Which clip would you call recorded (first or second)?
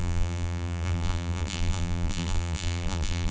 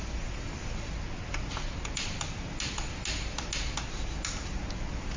second